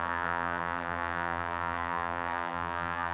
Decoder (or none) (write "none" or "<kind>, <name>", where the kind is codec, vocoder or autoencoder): vocoder, BigVGAN v2